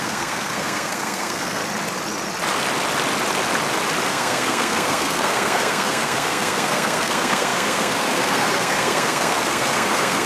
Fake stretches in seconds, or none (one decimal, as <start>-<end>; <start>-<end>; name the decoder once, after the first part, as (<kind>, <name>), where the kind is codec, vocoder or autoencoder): 0.0-1.6 (codec, SNAC); 4.1-10.3